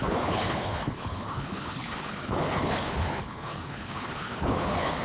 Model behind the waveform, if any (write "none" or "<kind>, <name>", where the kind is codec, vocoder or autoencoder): codec, HILCodec